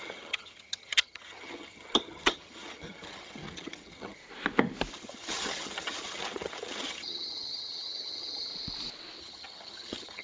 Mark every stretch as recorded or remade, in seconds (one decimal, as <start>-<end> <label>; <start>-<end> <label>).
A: 0.0-4.2 remade; 4.2-4.9 recorded; 4.9-8.5 remade; 8.5-9.2 recorded; 9.2-10.2 remade